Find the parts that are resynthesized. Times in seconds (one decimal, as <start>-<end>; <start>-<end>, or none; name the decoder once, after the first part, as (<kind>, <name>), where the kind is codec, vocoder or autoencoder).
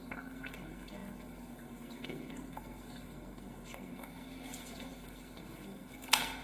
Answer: 0.0-6.4 (codec, SNAC)